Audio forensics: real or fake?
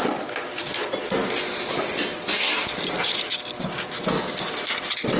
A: real